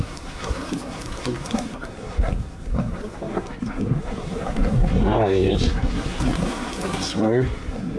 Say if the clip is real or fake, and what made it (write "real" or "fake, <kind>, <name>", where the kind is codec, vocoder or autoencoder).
fake, codec, SNAC